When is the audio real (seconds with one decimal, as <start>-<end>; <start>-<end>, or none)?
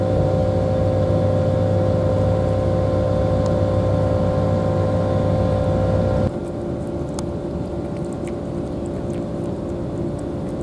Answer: 0.0-10.6